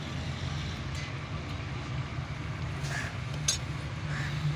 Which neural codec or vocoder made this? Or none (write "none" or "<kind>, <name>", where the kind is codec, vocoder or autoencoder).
none